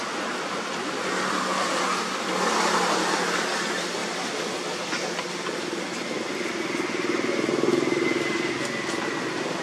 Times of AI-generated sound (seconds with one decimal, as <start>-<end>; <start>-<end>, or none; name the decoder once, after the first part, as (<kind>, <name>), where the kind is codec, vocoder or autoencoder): none